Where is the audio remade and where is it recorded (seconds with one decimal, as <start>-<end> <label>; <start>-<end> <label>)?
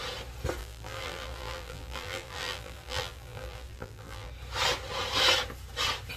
0.0-0.6 recorded; 0.6-4.3 remade; 4.3-6.2 recorded